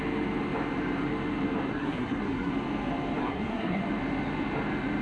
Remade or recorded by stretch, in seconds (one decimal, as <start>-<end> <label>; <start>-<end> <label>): 0.0-1.7 recorded; 1.7-2.5 remade; 2.5-3.2 recorded; 3.2-3.8 remade; 3.8-5.0 recorded